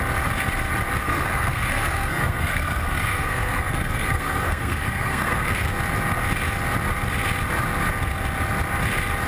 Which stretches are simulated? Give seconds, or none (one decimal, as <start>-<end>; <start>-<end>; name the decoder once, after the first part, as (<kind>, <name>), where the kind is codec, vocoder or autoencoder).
1.0-5.7 (codec, SNAC)